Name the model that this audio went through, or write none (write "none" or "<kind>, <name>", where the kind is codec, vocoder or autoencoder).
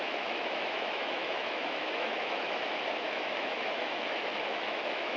autoencoder, DAC-VAE